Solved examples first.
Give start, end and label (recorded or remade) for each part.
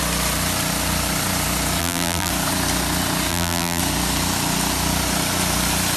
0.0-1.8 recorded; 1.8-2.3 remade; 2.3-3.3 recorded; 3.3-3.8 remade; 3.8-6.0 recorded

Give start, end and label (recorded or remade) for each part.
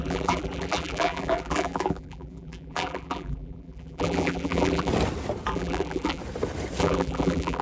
0.0-4.9 remade; 4.9-5.5 recorded; 5.5-6.2 remade; 6.2-6.8 recorded; 6.8-7.6 remade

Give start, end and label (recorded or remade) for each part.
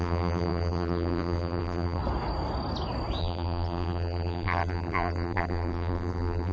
0.0-2.0 remade; 2.0-3.2 recorded; 3.2-6.5 remade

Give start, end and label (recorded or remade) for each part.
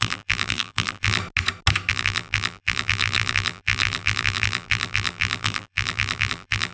0.0-1.2 remade; 1.2-1.9 recorded; 1.9-6.7 remade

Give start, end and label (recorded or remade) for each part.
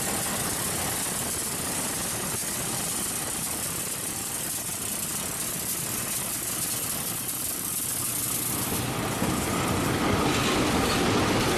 0.0-11.6 recorded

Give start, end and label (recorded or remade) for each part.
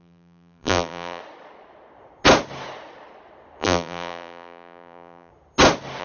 0.0-1.2 remade; 1.2-3.6 recorded; 3.6-5.3 remade; 5.3-6.0 recorded